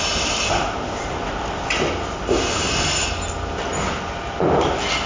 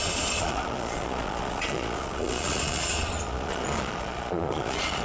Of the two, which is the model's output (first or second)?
second